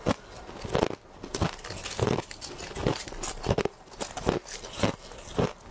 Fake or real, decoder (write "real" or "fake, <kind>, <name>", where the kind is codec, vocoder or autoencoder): real